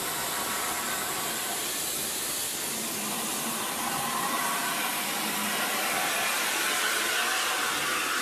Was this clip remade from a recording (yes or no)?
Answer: yes